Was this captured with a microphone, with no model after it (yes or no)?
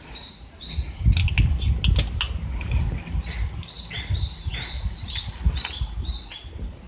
yes